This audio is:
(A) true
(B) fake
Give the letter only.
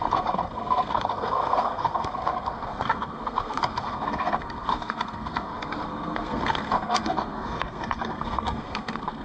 B